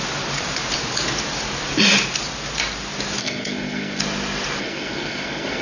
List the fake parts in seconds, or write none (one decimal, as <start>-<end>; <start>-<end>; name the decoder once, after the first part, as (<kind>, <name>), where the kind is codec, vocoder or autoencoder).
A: 3.2-4.0 (codec, SNAC); 4.6-5.6